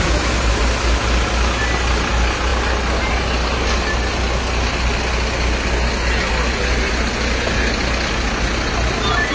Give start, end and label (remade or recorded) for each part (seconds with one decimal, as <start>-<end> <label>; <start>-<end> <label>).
0.0-9.3 recorded